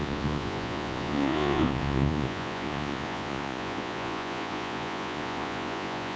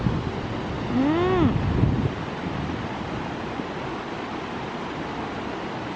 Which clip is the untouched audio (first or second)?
second